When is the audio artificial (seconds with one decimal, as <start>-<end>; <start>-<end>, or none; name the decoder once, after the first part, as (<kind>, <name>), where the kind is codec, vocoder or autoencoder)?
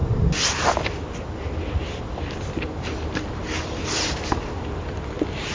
none